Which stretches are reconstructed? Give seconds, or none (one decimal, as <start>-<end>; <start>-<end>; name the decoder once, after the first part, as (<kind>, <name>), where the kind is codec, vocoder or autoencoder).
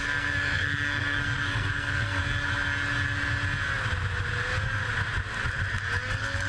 0.0-2.2 (codec, SNAC); 6.1-6.5